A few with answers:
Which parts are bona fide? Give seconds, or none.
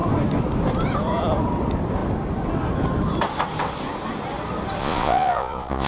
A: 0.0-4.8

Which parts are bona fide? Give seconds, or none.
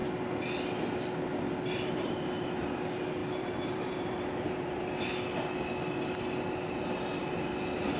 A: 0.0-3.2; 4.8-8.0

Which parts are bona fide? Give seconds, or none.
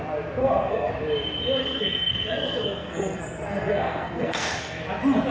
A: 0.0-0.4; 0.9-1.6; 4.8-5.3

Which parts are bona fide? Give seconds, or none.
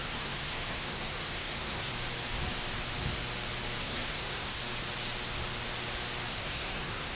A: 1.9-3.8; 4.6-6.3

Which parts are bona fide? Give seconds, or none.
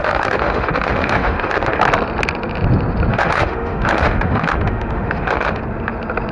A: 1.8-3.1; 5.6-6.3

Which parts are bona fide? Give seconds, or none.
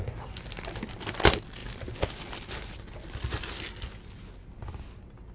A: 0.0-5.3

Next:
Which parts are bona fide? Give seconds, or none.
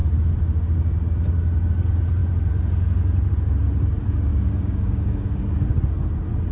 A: 0.0-4.3; 5.4-6.5